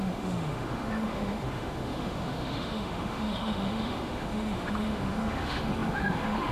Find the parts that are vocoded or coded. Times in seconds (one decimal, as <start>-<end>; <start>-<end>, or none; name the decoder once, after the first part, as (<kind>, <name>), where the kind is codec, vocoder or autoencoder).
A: 0.0-6.5 (autoencoder, DAC-VAE)